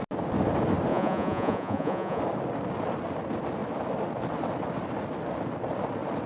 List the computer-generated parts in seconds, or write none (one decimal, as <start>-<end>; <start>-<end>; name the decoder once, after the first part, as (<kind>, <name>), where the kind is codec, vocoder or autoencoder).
0.9-2.2 (vocoder, Vocos)